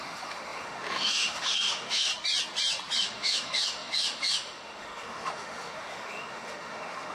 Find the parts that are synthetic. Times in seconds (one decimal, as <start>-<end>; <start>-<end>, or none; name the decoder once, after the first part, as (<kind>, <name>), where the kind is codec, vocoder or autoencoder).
0.0-2.1 (autoencoder, DAC-VAE); 3.0-7.1